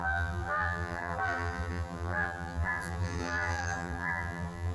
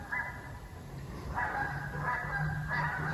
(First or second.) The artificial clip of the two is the first